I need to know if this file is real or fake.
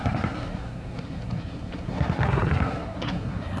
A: fake